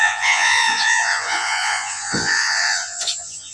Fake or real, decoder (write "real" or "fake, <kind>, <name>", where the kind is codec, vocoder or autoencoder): fake, vocoder, Vocos